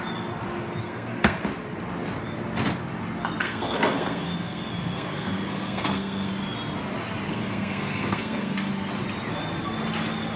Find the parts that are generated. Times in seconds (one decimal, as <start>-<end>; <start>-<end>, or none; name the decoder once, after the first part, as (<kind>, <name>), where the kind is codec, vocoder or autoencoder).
0.8-1.4 (codec, SNAC); 3.4-6.3; 7.3-8.7